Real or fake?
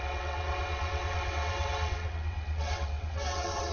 fake